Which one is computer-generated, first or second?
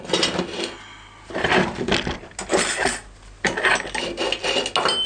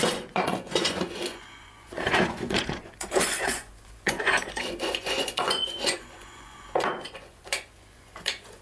second